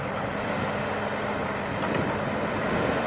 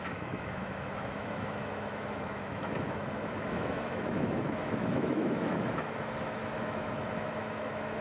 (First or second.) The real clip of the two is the first